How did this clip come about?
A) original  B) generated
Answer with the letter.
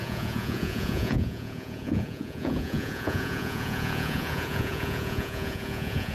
B